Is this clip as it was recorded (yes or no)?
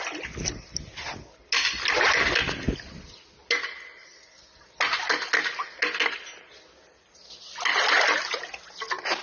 yes